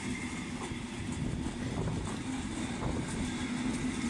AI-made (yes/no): no